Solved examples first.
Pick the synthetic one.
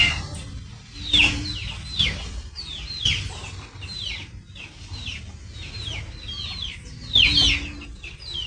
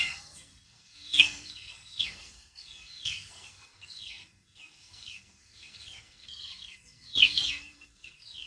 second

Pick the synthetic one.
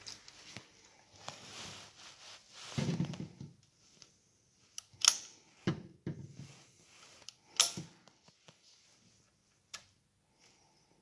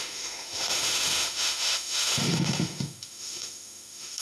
second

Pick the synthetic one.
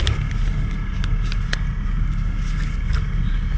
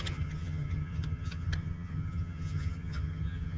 second